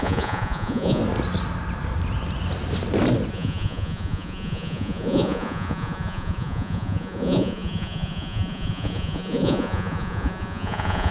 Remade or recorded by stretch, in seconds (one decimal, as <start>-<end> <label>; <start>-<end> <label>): 0.0-1.0 remade; 1.0-3.3 recorded; 3.3-11.1 remade